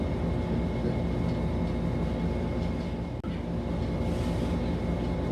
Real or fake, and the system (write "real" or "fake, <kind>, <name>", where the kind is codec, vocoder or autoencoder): real